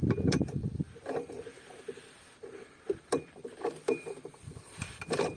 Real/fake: fake